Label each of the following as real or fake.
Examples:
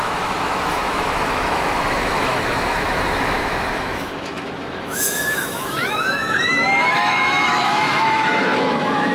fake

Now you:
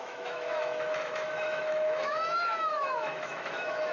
fake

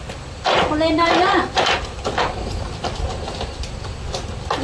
real